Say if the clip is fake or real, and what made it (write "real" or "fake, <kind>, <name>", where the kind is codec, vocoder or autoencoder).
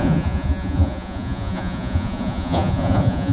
fake, vocoder, Vocos